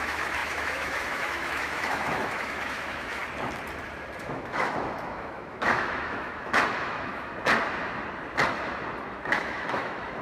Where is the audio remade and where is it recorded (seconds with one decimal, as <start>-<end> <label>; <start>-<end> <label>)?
0.0-3.2 remade; 3.2-4.2 recorded; 4.2-7.3 remade; 7.3-9.1 recorded; 9.1-10.2 remade